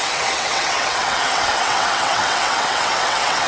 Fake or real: fake